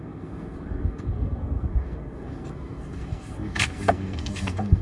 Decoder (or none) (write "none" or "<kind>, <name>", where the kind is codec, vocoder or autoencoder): codec, SNAC